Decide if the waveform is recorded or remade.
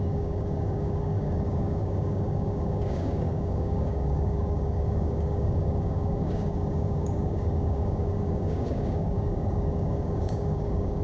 remade